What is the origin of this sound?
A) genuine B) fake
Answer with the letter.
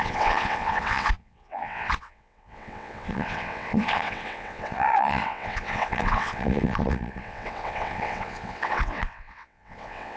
B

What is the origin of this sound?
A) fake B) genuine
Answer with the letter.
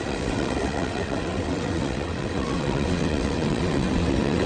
A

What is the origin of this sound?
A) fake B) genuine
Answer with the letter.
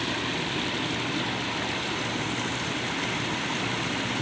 B